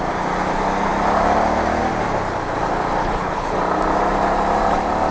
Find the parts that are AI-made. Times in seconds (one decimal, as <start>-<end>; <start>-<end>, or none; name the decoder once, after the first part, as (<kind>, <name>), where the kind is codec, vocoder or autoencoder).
3.0-3.6 (codec, HILCodec)